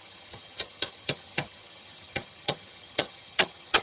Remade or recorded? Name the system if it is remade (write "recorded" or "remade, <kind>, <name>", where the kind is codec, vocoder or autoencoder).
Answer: remade, vocoder, HiFi-GAN